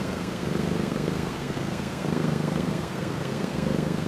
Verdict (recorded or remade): remade